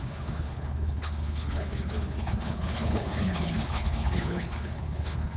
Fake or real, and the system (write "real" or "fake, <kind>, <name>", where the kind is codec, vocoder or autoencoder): fake, codec, HILCodec